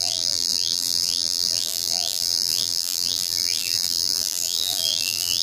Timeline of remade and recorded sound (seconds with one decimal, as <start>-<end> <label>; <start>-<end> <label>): 0.0-5.4 remade

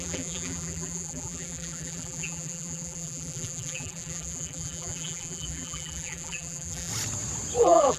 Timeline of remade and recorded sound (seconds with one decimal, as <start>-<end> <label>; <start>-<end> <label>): 0.0-6.9 remade; 6.9-7.6 recorded; 7.6-8.0 remade

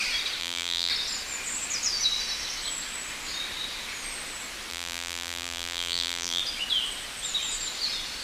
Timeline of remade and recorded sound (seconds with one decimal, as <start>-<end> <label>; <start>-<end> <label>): 0.0-0.4 recorded; 0.4-0.9 remade; 0.9-4.7 recorded; 4.7-6.4 remade; 6.4-8.2 recorded

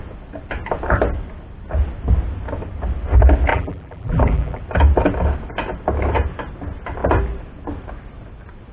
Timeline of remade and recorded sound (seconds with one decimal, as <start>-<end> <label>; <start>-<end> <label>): 0.0-3.5 recorded; 3.5-4.6 remade; 4.6-8.7 recorded

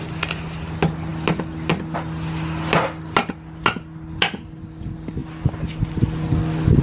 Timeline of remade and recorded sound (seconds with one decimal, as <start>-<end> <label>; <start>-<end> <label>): 0.0-6.8 recorded